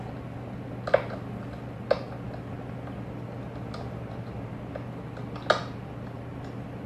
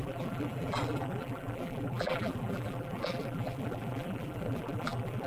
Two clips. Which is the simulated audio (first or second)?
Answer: second